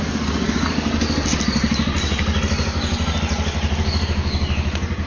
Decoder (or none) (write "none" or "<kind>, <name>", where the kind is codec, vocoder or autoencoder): none